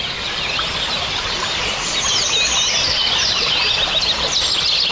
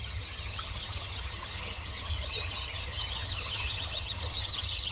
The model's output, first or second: second